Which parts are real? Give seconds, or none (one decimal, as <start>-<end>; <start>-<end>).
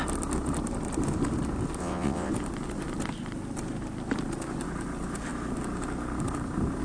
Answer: 0.0-1.8; 2.3-6.8